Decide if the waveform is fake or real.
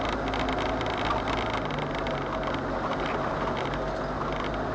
real